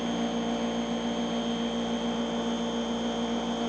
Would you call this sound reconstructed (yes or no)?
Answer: no